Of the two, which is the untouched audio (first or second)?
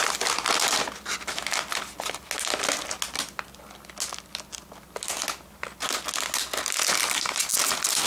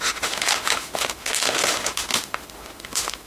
first